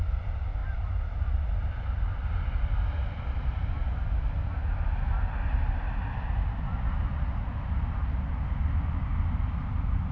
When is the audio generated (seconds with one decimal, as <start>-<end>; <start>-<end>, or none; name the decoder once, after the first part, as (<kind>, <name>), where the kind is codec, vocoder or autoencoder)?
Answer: none